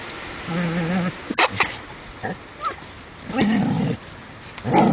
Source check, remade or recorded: recorded